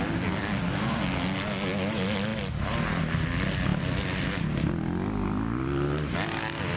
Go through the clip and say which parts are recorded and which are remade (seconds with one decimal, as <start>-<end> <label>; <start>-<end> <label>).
0.0-6.8 recorded